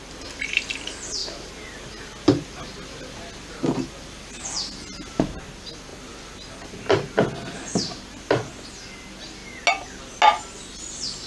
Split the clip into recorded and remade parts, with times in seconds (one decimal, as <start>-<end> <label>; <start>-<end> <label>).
0.0-11.3 recorded